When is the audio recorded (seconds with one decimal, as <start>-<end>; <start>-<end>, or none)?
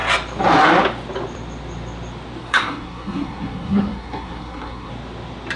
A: 0.0-2.4; 4.9-5.6